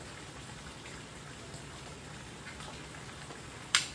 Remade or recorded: recorded